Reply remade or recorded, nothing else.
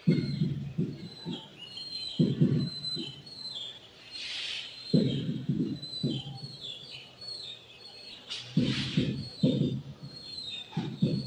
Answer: remade